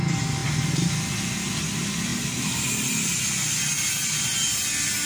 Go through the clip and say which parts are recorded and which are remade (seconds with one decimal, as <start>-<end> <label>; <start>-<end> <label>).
0.0-5.1 recorded